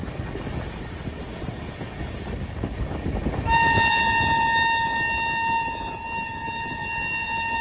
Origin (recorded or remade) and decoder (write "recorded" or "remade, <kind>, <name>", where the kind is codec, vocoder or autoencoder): recorded